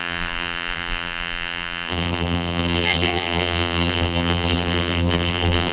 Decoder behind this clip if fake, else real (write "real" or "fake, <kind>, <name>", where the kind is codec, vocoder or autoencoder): fake, vocoder, BigVGAN v2